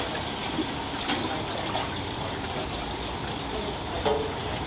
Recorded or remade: recorded